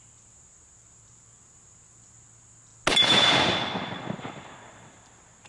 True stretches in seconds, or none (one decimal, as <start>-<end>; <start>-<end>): 0.0-5.5

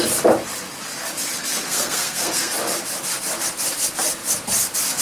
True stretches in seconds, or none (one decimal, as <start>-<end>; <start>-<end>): 0.0-1.5; 2.5-5.0

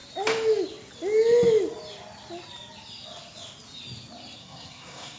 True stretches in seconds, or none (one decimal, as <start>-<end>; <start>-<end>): 0.0-4.4

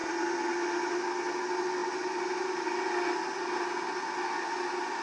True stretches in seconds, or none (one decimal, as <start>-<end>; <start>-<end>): 0.0-5.0